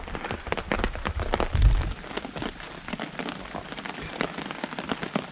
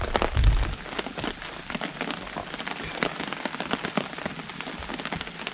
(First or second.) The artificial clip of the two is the first